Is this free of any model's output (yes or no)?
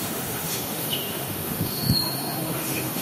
no